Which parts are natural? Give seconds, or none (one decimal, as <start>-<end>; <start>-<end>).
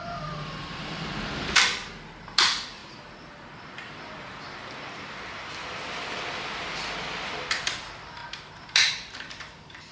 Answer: 2.8-3.6; 5.6-6.3; 8.2-8.9